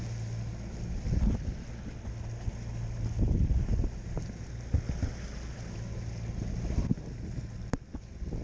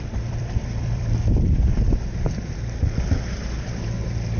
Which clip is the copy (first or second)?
second